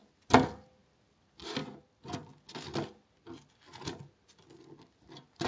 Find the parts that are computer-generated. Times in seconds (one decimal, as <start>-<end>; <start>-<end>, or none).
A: none